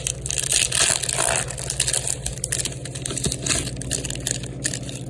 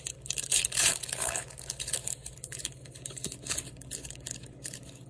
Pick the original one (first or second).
first